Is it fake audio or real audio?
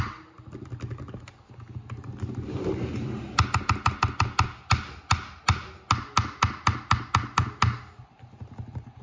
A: real